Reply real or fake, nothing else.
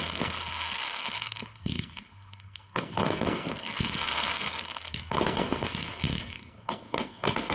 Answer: fake